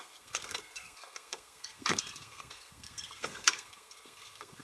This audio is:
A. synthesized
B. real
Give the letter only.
A